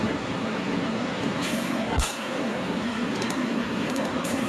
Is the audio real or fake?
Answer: fake